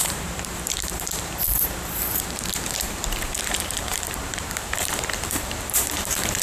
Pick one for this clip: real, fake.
fake